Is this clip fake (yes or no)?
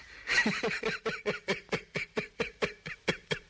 no